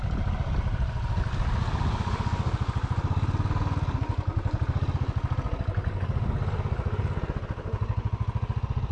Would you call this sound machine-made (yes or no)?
no